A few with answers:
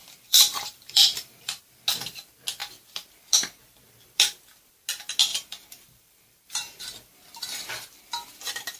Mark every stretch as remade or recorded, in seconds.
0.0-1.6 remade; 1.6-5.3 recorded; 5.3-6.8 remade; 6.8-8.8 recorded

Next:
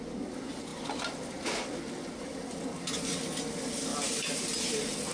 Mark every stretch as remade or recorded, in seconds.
0.0-3.9 recorded; 3.9-4.4 remade; 4.4-5.1 recorded

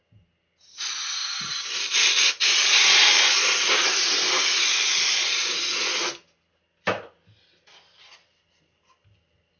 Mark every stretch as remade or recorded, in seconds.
0.0-9.6 recorded

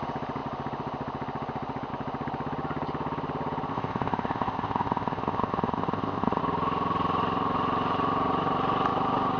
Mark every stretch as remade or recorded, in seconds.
0.0-3.7 recorded; 3.7-6.4 remade; 6.4-9.4 recorded